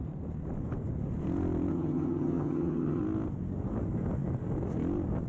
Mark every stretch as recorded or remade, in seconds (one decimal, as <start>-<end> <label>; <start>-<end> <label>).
0.0-1.7 recorded; 1.7-3.0 remade; 3.0-5.3 recorded